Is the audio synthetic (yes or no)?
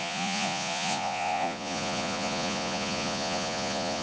yes